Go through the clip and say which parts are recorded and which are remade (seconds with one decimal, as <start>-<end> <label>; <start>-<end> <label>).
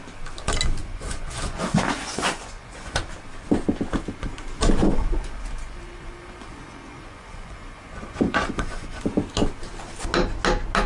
0.0-0.8 recorded; 0.8-3.0 remade; 3.0-4.8 recorded; 4.8-9.0 remade; 9.0-10.9 recorded